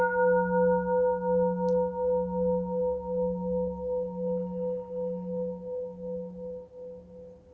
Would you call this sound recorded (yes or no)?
yes